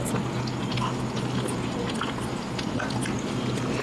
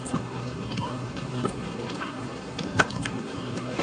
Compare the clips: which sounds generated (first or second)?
second